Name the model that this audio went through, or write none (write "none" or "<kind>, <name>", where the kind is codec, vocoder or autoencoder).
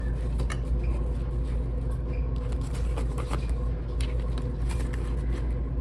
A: none